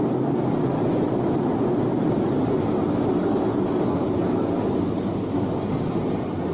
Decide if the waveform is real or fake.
real